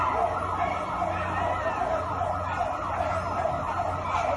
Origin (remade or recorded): recorded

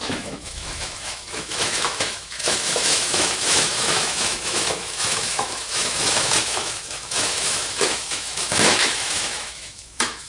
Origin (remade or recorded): remade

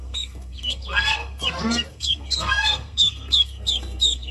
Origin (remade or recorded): remade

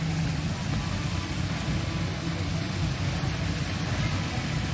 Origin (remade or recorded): recorded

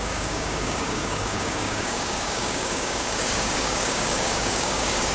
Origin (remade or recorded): remade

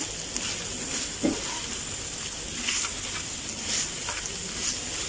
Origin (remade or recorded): recorded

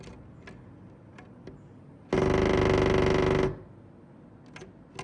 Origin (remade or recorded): recorded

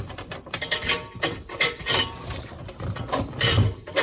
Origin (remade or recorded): remade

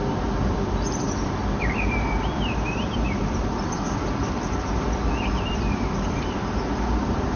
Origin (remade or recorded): remade